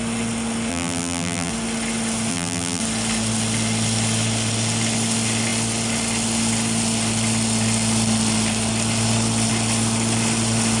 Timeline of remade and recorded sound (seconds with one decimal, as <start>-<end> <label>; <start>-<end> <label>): 0.0-0.7 recorded; 0.7-1.5 remade; 1.5-2.3 recorded; 2.3-2.8 remade; 2.8-10.8 recorded